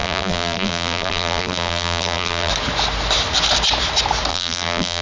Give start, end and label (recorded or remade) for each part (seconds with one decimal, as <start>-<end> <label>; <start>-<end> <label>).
0.0-2.5 remade; 2.5-4.3 recorded; 4.3-5.0 remade